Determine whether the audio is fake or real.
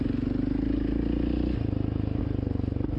real